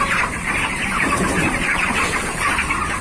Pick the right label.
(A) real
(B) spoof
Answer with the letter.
B